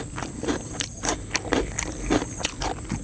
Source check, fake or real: real